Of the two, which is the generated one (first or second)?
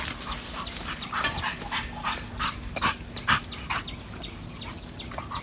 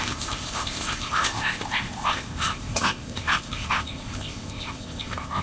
second